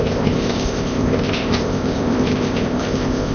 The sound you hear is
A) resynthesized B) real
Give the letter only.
A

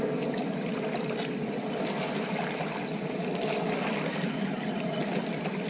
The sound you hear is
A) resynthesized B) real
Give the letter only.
B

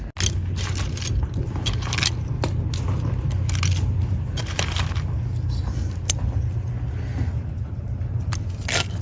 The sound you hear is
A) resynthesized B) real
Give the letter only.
B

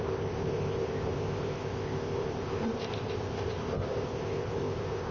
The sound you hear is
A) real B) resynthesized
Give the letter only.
B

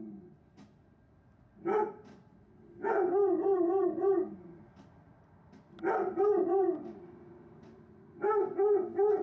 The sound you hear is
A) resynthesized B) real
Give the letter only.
B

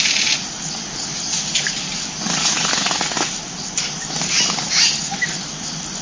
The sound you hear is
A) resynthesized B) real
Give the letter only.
B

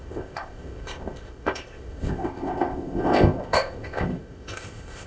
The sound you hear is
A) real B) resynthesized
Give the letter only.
B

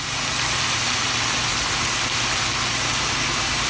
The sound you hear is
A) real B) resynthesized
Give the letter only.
A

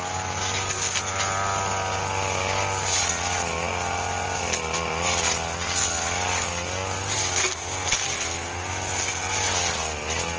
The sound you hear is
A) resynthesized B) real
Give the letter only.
B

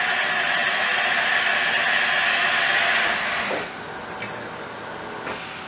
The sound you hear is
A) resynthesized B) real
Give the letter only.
B